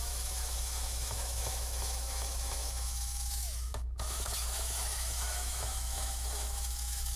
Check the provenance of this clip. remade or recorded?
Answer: remade